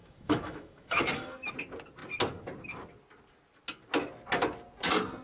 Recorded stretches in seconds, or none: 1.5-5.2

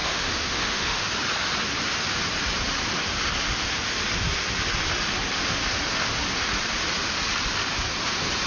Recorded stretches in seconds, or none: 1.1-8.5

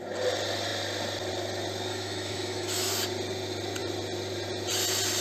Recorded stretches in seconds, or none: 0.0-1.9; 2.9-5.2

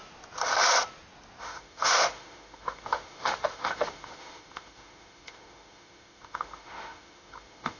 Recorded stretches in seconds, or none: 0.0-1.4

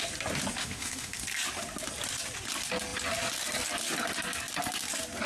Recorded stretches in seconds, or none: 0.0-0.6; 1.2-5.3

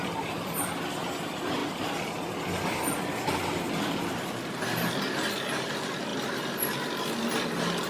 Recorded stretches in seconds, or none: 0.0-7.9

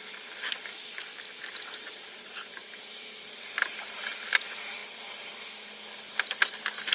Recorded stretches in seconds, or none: 0.0-0.7; 1.5-2.6; 3.2-6.9

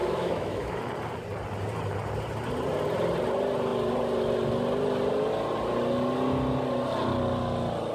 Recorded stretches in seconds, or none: 0.8-7.9